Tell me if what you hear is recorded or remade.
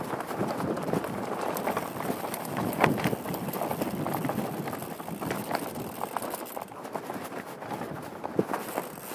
recorded